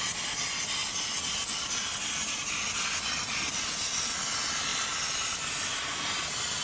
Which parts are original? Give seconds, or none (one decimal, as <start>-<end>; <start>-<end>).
0.0-4.7; 5.8-6.6